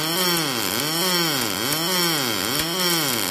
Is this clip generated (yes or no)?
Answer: no